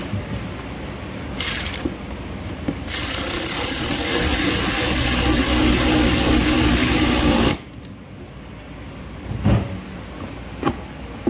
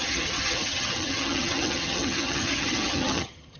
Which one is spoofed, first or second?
second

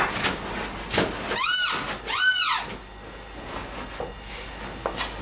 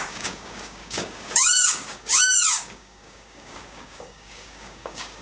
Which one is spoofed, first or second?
second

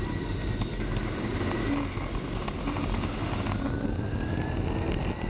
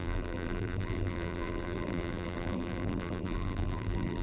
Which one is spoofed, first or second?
second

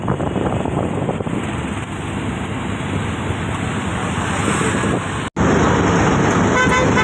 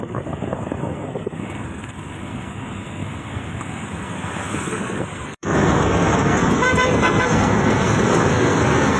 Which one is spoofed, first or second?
second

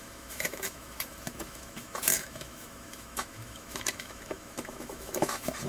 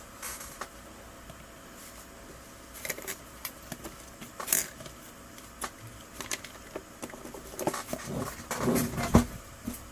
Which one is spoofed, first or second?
first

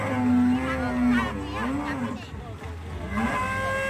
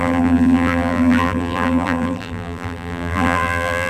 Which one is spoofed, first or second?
second